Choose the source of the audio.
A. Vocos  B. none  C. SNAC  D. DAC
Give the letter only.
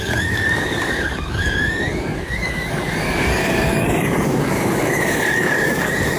D